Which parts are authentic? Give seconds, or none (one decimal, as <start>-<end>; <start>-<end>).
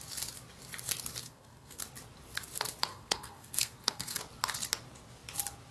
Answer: 0.0-1.2; 1.8-2.9; 4.2-5.7